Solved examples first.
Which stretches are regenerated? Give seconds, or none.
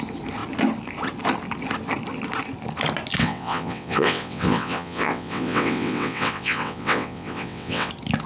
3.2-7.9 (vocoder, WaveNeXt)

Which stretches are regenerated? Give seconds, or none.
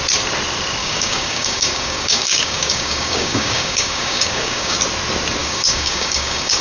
0.8-4.8 (codec, DAC); 5.4-6.6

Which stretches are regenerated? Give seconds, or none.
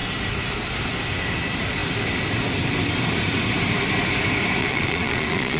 4.6-5.6 (vocoder, Vocos)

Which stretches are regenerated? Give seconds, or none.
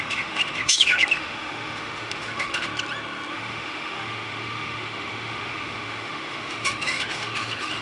0.0-2.7 (autoencoder, DAC-VAE); 3.3-7.8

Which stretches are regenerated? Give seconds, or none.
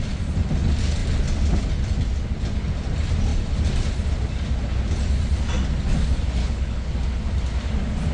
6.4-6.9 (codec, HILCodec)